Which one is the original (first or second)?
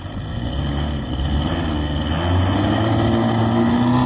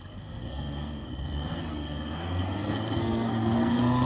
first